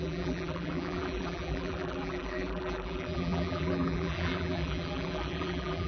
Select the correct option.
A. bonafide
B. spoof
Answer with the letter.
B